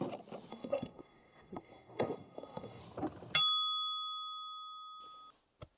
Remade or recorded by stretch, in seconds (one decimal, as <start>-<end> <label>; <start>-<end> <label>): 0.0-0.5 recorded; 0.5-2.8 remade; 2.8-5.8 recorded